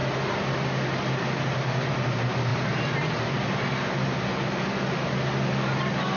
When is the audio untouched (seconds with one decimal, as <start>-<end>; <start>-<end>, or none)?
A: 0.0-6.2